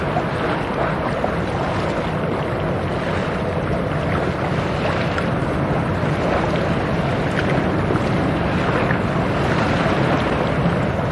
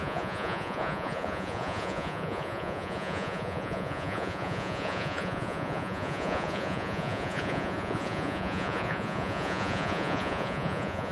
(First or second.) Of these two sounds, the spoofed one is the second